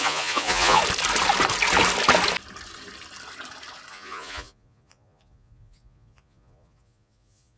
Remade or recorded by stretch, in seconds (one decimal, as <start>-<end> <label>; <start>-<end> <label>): 0.0-0.8 remade; 0.8-3.9 recorded; 3.9-7.6 remade